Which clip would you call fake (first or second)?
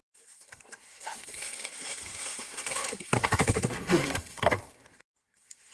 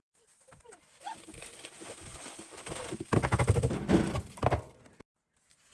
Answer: first